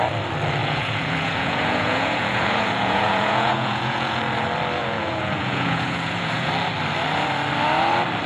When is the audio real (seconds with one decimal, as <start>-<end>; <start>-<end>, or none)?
0.0-0.6; 4.2-4.8; 6.5-8.3